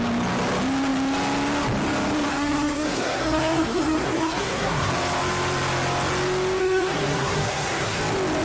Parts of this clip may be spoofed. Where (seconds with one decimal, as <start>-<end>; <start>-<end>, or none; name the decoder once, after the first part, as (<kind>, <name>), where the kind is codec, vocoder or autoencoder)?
2.3-4.9 (codec, SNAC); 6.6-8.0